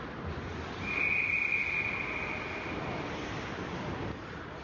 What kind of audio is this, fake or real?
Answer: real